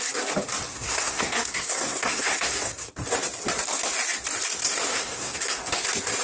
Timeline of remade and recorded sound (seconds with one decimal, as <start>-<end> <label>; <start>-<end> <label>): 0.0-0.7 recorded; 0.7-2.9 remade; 2.9-4.9 recorded; 4.9-5.6 remade; 5.6-6.2 recorded